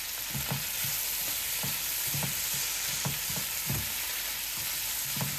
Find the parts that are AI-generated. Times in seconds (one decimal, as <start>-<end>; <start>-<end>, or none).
none